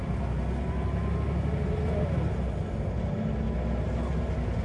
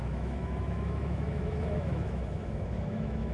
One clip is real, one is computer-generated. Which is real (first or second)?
first